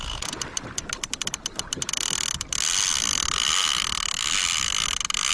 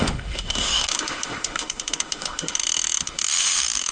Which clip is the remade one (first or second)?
second